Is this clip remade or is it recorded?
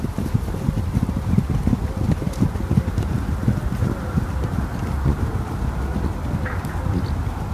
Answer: recorded